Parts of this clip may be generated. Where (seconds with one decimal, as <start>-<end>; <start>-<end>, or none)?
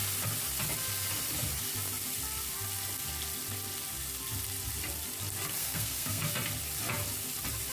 5.6-6.2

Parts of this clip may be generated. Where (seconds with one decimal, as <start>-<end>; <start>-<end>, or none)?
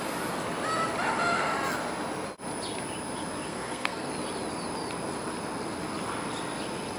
3.5-4.1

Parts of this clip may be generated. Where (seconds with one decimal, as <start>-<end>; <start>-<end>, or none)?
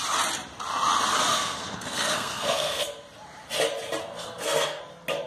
1.3-2.8; 4.0-4.8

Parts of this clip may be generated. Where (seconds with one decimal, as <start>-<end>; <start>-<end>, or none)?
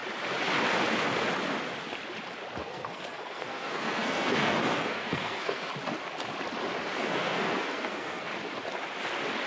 2.6-5.7; 7.0-8.3